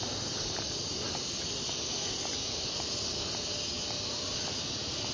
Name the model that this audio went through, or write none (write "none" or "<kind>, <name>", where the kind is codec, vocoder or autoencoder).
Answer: none